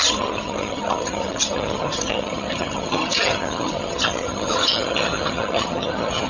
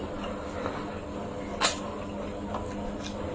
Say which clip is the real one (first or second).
second